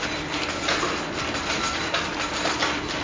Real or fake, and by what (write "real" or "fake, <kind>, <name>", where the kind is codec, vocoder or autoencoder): real